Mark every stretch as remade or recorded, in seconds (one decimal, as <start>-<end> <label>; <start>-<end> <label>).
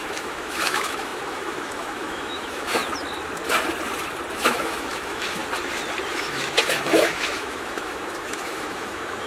0.0-2.8 remade; 2.8-4.3 recorded; 4.3-5.4 remade; 5.4-6.1 recorded; 6.1-9.3 remade